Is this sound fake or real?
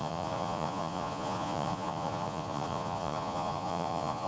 fake